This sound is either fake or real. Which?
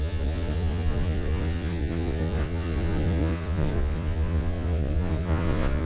fake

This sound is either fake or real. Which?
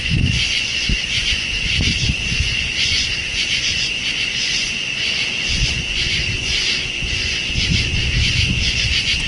fake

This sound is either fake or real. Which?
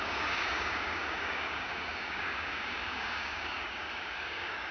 fake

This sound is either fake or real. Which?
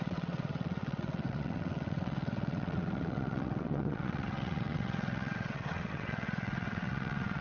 fake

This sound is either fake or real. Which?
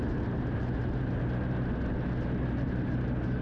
real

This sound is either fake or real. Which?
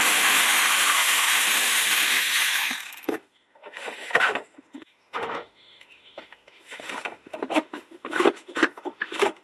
fake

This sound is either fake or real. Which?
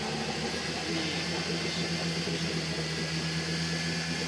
real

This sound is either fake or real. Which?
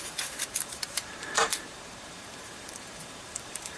fake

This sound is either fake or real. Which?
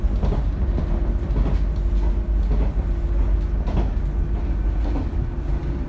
real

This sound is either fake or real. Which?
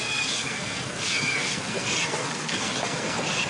fake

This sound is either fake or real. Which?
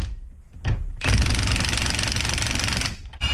real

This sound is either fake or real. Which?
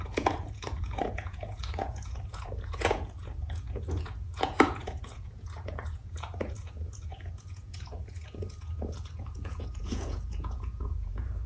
fake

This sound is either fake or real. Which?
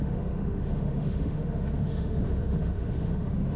fake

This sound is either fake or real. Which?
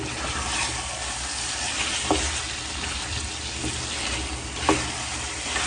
real